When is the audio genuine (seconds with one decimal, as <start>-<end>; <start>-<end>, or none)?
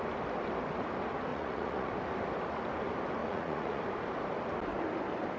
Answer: 0.0-1.3; 1.9-3.2; 3.8-5.4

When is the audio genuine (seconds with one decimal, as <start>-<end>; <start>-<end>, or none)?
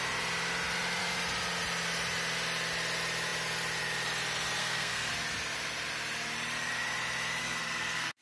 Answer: 0.0-4.6; 5.1-7.4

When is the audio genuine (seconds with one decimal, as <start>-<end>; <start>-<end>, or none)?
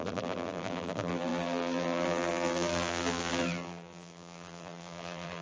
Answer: none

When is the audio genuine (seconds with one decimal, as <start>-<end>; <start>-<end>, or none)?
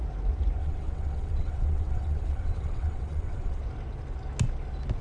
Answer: 0.0-0.6; 3.6-5.0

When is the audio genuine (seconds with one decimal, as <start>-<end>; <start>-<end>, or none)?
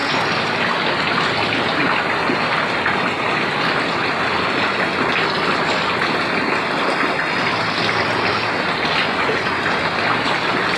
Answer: 0.0-9.0; 9.6-10.8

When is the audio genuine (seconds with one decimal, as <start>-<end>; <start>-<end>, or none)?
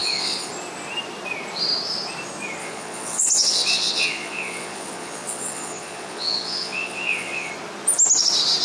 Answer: 0.5-2.6; 7.5-8.6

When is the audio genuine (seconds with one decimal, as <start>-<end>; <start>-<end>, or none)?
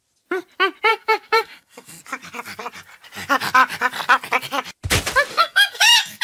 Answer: 0.0-0.9; 2.0-5.3